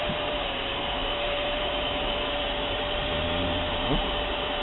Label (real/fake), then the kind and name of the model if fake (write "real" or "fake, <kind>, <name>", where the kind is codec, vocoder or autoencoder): fake, vocoder, BigVGAN v2